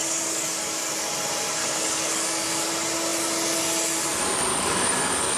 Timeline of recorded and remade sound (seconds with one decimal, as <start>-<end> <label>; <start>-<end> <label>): 0.0-1.0 remade; 1.0-1.6 recorded; 1.6-2.7 remade; 2.7-4.5 recorded; 4.5-5.4 remade